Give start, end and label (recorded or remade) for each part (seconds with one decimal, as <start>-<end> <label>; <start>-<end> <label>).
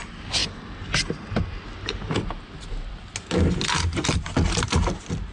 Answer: 0.0-5.3 recorded